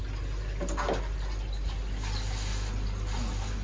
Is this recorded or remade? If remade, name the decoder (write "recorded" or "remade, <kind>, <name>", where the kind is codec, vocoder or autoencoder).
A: recorded